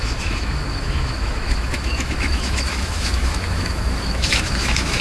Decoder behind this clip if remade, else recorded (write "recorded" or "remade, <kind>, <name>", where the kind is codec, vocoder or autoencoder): remade, autoencoder, DAC-VAE